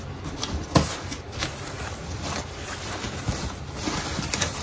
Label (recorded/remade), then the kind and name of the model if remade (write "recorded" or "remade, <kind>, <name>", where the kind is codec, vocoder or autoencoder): recorded